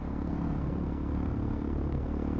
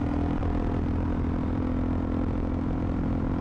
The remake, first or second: first